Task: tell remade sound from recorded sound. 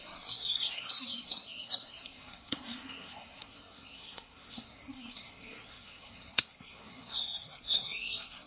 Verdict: remade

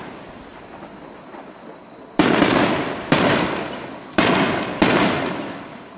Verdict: recorded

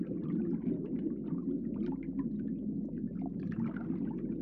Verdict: recorded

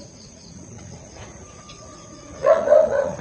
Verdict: remade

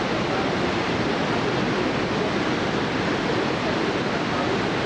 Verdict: recorded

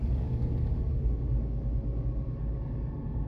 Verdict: remade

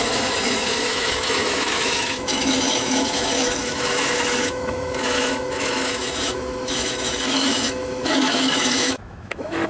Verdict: remade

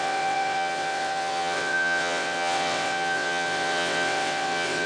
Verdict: remade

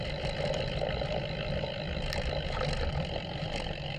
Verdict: recorded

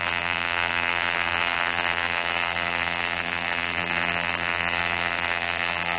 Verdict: remade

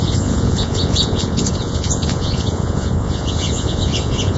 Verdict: remade